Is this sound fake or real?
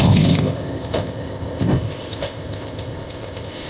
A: fake